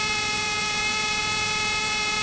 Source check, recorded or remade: remade